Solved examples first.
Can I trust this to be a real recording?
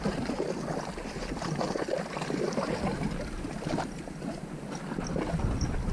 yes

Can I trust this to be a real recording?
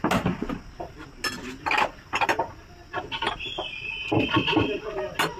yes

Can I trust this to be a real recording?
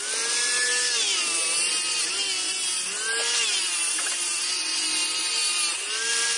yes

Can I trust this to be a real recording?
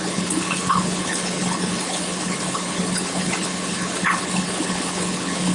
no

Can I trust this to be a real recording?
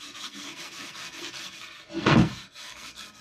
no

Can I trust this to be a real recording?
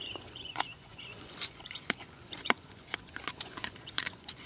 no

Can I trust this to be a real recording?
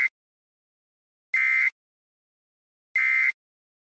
yes